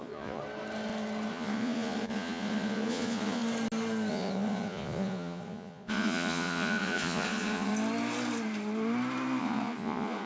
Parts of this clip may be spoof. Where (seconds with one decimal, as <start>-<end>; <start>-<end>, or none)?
0.0-0.4; 1.3-3.4; 4.1-7.7; 9.4-10.3